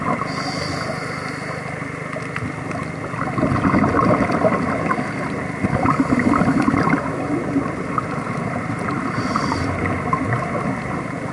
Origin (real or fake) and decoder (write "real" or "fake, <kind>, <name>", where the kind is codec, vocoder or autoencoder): real